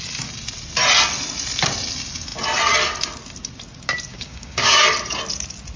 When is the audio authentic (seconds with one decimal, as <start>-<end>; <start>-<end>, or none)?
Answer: 0.0-4.1; 4.8-5.8